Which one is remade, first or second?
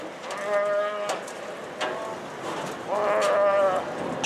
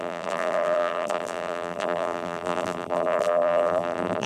second